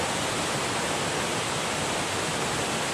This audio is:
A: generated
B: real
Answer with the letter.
B